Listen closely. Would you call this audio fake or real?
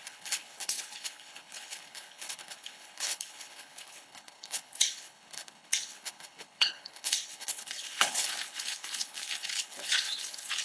fake